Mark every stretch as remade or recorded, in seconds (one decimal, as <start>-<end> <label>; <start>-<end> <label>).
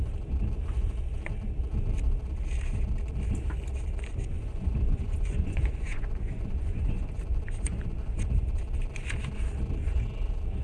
0.0-4.3 recorded; 4.3-8.4 remade; 8.4-10.6 recorded